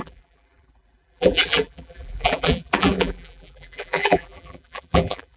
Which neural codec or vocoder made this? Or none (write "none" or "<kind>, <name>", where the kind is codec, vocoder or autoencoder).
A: vocoder, BigVGAN v2